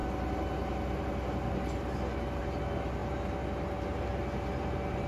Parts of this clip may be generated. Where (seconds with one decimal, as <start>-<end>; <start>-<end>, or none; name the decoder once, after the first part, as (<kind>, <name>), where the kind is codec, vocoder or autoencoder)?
none